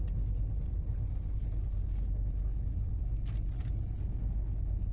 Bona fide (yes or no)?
yes